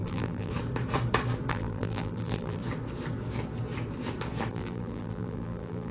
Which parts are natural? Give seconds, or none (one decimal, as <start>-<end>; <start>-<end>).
0.5-1.5; 2.6-4.5